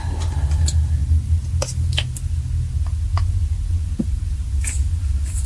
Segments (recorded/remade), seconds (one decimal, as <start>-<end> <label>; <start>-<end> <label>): 0.0-5.5 recorded